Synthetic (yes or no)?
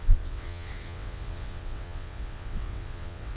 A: yes